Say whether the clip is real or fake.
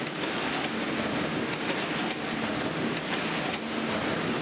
real